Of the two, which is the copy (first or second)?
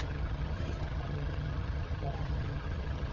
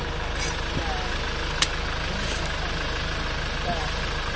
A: first